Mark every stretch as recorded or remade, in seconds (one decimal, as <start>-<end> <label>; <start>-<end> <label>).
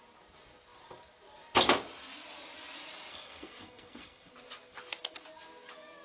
0.0-3.1 recorded; 3.1-4.3 remade; 4.3-6.0 recorded